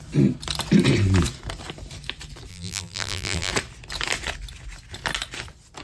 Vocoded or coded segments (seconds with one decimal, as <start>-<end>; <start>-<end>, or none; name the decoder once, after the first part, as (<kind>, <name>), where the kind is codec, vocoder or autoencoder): 2.5-3.5 (vocoder, BigVGAN v2)